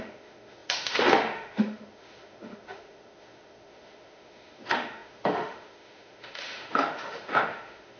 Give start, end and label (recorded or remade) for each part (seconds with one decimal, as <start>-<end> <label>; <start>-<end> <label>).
0.0-8.0 remade